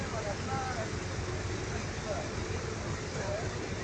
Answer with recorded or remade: recorded